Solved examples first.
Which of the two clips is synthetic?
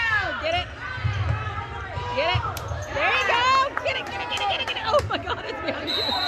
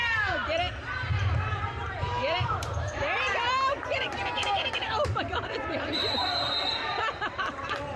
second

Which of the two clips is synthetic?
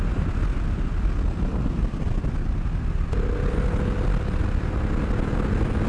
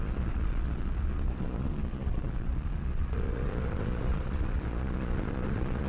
second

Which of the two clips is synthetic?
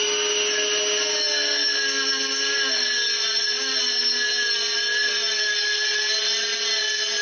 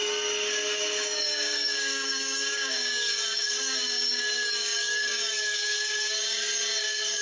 second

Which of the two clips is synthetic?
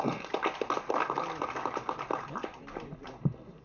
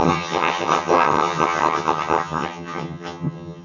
second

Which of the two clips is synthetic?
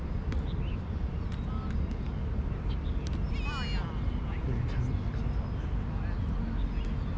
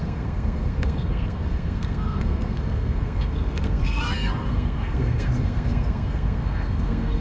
second